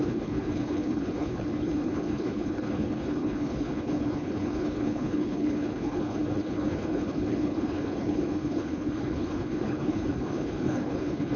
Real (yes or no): no